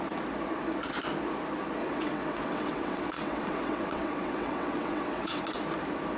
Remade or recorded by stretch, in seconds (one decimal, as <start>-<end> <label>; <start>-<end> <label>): 0.0-1.8 recorded; 1.8-5.4 remade; 5.4-6.2 recorded